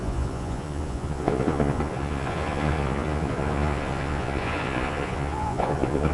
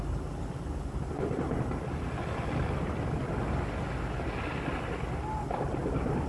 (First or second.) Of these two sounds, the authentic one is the second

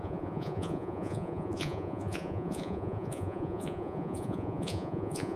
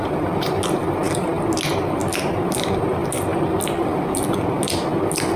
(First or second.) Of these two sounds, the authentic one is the second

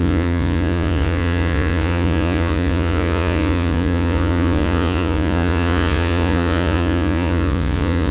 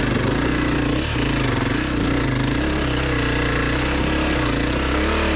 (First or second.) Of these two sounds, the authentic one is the second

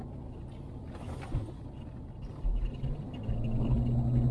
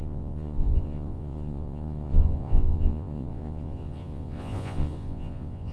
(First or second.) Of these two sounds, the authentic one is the first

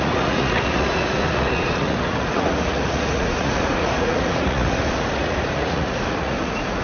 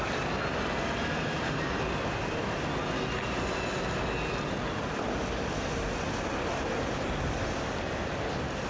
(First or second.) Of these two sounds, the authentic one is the second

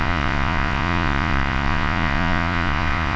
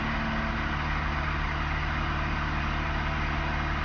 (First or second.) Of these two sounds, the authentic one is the second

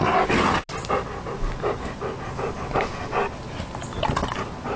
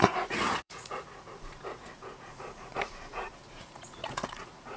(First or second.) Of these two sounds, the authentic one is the first